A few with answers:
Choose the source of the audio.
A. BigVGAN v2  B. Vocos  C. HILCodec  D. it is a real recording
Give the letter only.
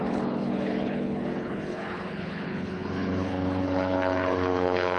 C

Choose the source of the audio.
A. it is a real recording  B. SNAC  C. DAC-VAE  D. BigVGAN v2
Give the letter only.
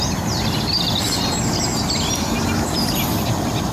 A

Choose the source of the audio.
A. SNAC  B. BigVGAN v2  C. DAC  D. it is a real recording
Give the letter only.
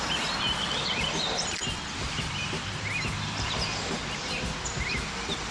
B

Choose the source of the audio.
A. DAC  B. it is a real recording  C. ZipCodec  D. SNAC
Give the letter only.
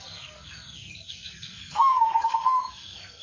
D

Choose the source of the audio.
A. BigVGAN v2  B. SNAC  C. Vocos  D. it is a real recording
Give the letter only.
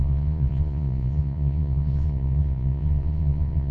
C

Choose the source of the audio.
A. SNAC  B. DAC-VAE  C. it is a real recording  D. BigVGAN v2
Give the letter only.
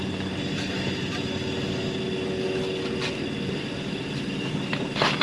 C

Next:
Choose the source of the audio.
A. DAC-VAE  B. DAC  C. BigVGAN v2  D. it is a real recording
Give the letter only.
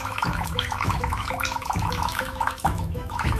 A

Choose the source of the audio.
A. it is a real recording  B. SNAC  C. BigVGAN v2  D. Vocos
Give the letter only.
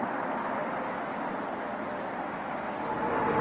C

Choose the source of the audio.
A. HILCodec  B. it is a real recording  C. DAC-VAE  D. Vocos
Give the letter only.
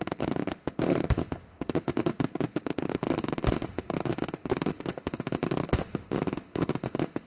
C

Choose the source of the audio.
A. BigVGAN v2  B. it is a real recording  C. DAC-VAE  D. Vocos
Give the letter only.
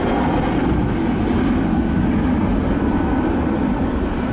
B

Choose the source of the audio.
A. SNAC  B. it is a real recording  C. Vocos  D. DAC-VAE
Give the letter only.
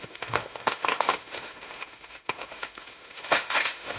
D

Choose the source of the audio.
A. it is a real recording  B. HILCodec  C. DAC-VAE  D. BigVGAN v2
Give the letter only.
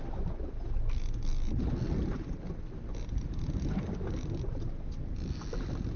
A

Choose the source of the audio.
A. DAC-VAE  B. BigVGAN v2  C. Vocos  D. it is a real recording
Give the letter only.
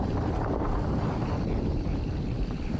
B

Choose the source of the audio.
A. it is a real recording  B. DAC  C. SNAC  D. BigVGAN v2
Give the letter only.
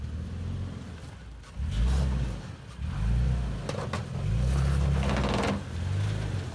A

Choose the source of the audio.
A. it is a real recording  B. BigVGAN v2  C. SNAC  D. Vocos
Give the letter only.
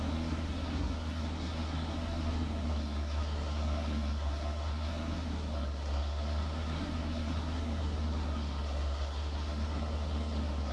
C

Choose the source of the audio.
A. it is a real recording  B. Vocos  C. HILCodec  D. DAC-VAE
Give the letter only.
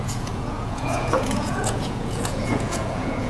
B